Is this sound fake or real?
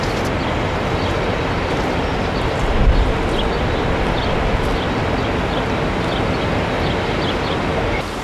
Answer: real